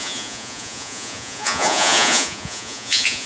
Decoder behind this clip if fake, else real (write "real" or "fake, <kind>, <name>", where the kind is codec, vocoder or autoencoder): fake, vocoder, Vocos